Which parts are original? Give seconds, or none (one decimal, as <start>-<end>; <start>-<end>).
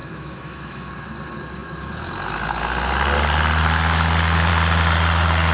0.9-5.5